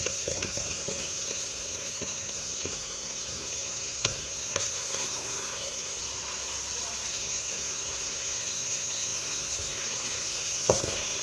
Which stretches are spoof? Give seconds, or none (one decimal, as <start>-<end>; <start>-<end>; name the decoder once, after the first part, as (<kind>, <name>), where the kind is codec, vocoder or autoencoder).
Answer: 0.0-6.0 (codec, SNAC); 7.1-11.2